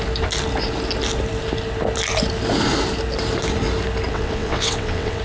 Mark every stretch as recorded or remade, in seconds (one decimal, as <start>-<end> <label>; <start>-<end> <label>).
0.0-4.1 recorded; 4.1-5.2 remade

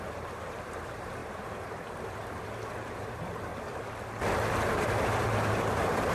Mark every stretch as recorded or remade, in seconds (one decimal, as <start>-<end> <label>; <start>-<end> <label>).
0.0-3.5 remade; 3.5-4.7 recorded; 4.7-6.1 remade

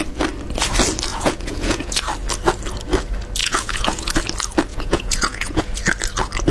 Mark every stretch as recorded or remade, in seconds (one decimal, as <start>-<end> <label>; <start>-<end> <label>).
0.0-1.1 recorded; 1.1-2.0 remade; 2.0-3.4 recorded; 3.4-4.1 remade; 4.1-4.7 recorded; 4.7-5.6 remade; 5.6-6.5 recorded

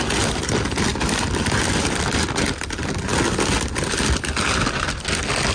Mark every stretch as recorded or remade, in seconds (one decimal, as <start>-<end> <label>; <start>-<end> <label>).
0.0-5.5 recorded

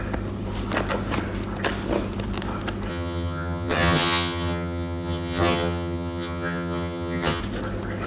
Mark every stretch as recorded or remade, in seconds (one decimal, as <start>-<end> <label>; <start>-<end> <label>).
0.0-2.9 recorded; 2.9-7.4 remade; 7.4-8.1 recorded

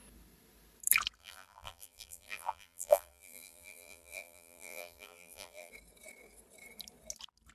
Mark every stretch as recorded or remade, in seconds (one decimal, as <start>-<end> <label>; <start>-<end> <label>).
0.0-1.2 recorded; 1.2-5.7 remade; 5.7-7.5 recorded

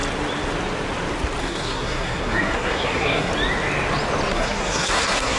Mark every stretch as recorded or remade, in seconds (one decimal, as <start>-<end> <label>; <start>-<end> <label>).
0.0-1.4 recorded; 1.4-3.3 remade; 3.3-4.3 recorded; 4.3-5.4 remade